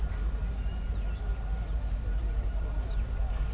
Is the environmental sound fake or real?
real